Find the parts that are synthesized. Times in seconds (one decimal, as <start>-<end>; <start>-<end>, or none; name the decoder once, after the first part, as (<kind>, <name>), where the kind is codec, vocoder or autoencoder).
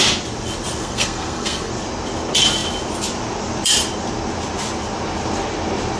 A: 0.8-1.7 (codec, SNAC)